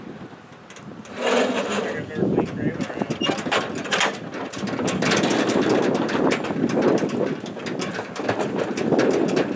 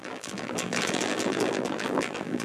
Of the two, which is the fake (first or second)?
second